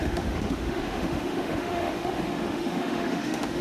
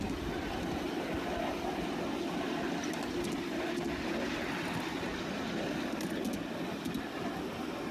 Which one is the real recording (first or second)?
second